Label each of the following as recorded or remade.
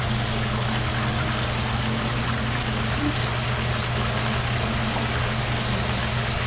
recorded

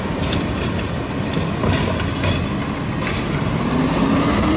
recorded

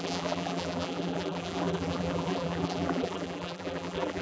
remade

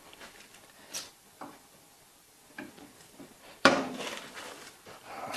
remade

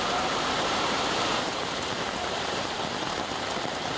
remade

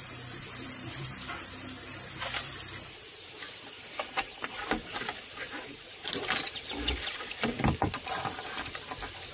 remade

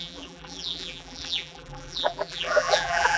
remade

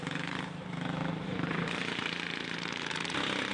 remade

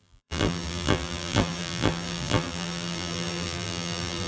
remade